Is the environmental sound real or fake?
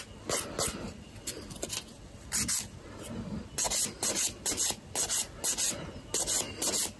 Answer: real